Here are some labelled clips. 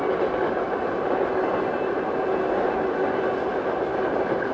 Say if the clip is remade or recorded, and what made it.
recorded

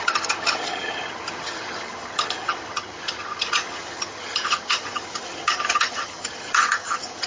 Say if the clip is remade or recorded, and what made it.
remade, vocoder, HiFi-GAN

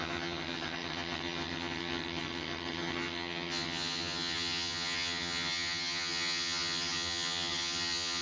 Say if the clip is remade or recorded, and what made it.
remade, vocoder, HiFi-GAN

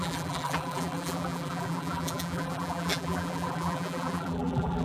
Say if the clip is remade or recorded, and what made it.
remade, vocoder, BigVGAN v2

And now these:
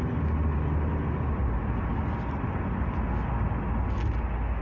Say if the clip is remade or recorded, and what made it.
recorded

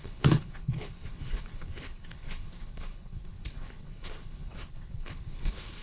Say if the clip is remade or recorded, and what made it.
remade, codec, HILCodec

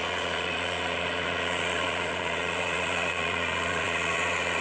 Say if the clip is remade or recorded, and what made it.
remade, vocoder, Vocos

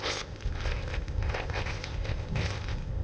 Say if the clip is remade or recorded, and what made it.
remade, codec, ZipCodec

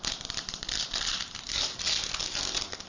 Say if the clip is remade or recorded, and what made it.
recorded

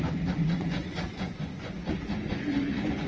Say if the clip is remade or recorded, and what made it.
remade, vocoder, Vocos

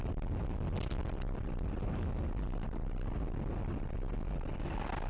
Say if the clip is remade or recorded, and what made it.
recorded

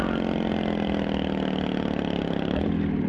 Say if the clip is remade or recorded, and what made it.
recorded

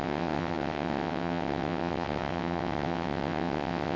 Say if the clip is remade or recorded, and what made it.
remade, vocoder, WaveNeXt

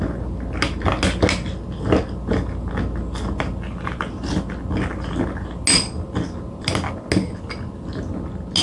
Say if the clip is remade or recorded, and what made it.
recorded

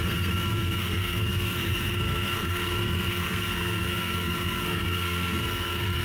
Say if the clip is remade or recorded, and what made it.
remade, codec, SNAC